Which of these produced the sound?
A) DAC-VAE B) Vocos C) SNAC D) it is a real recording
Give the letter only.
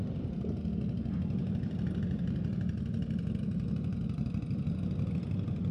D